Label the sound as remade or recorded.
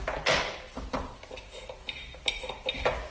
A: recorded